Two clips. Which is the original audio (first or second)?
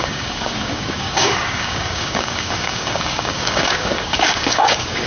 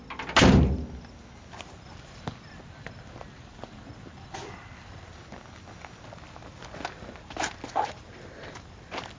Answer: second